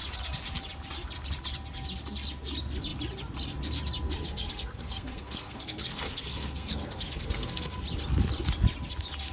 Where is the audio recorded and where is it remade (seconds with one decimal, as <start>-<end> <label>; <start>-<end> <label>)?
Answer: 0.0-4.2 recorded; 4.2-7.8 remade; 7.8-9.3 recorded